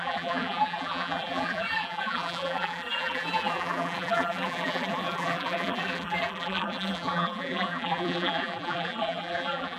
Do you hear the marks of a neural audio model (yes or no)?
yes